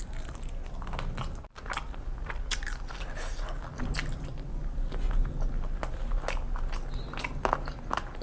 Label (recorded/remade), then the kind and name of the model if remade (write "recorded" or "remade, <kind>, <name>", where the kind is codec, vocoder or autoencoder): recorded